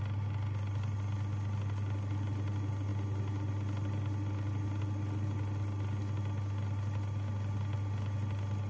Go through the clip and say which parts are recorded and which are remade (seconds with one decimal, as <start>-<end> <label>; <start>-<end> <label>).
0.0-8.7 recorded